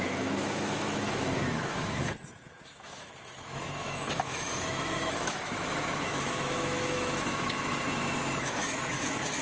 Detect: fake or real fake